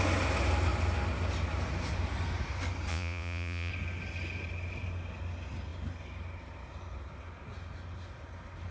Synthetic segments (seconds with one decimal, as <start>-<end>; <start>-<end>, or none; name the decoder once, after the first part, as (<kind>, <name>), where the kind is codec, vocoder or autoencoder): 2.9-3.7 (vocoder, Vocos)